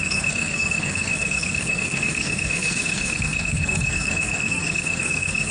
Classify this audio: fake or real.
fake